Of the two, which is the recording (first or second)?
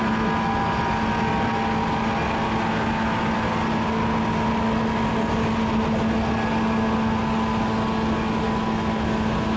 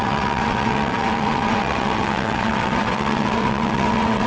first